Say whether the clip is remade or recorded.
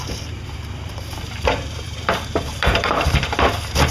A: remade